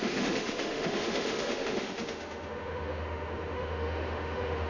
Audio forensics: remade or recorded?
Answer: remade